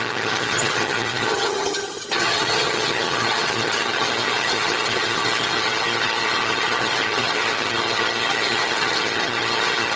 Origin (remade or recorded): remade